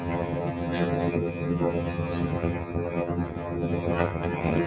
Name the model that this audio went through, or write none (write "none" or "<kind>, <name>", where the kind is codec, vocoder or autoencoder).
vocoder, HiFi-GAN